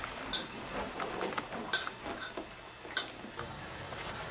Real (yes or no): yes